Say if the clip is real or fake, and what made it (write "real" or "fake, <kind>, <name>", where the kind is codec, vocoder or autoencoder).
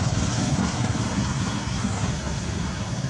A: fake, codec, SNAC